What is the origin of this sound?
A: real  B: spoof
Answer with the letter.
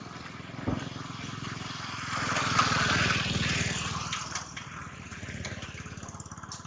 A